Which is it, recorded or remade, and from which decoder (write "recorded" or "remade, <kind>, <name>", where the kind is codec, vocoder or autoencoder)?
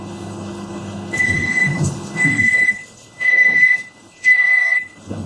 remade, codec, HILCodec